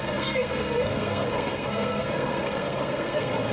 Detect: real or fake fake